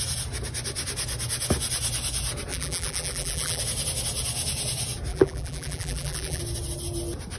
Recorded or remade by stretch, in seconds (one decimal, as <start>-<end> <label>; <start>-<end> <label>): 0.0-2.5 recorded; 2.5-3.6 remade; 3.6-5.1 recorded; 5.1-6.4 remade; 6.4-7.4 recorded